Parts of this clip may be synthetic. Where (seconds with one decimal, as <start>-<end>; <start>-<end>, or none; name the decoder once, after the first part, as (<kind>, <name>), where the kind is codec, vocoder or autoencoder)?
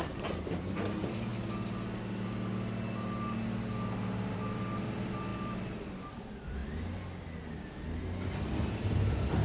0.0-1.3 (vocoder, BigVGAN v2); 4.3-6.6; 8.3-9.4